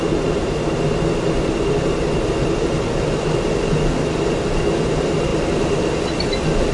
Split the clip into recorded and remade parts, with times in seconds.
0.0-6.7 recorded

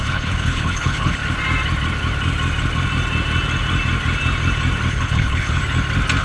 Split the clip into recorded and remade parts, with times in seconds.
0.0-1.2 remade; 1.2-4.9 recorded; 4.9-5.6 remade; 5.6-6.2 recorded

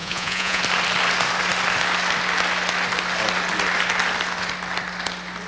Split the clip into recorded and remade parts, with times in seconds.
0.0-0.6 remade; 0.6-5.5 recorded

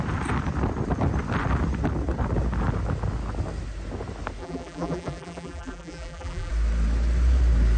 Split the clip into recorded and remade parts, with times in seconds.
0.0-4.4 recorded; 4.4-6.5 remade; 6.5-7.8 recorded

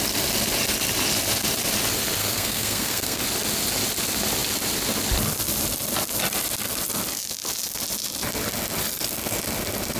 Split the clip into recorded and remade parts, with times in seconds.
0.0-2.2 recorded; 2.2-3.2 remade; 3.2-10.0 recorded

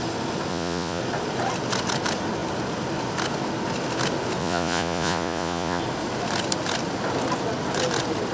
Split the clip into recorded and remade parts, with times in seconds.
0.0-0.5 recorded; 0.5-1.0 remade; 1.0-4.4 recorded; 4.4-5.8 remade; 5.8-8.3 recorded

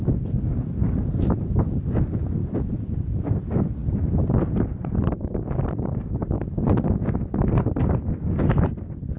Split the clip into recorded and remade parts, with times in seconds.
0.0-2.4 recorded; 2.4-2.9 remade; 2.9-3.8 recorded; 3.8-7.1 remade; 7.1-9.2 recorded